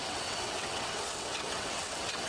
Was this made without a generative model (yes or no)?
no